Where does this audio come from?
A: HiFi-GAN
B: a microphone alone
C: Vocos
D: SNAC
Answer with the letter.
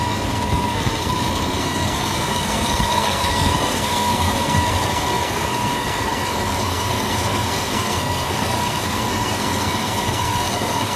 D